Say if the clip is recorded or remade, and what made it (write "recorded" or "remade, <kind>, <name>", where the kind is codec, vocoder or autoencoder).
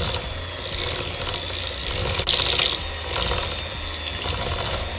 recorded